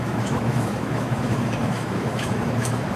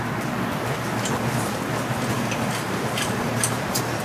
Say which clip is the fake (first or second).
first